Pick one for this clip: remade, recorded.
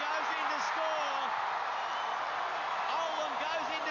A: recorded